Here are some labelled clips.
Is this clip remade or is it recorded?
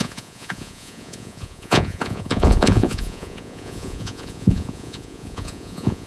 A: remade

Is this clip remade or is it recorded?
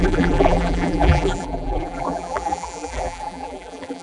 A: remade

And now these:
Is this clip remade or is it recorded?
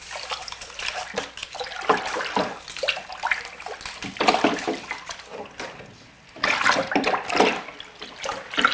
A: recorded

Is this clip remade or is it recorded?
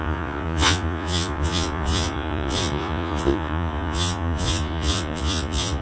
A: remade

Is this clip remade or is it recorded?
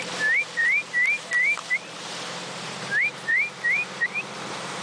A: remade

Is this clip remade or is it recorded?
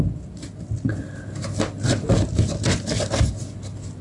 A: recorded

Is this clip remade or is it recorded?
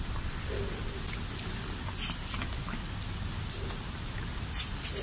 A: recorded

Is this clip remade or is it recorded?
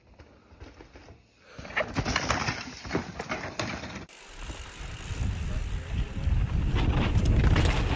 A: recorded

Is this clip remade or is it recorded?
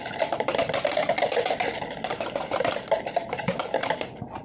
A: recorded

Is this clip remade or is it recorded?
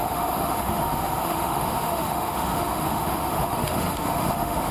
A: remade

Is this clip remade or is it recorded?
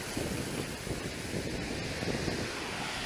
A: recorded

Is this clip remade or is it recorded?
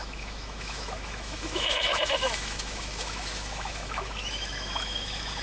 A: remade